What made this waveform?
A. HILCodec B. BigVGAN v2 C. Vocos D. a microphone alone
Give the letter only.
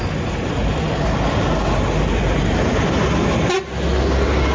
D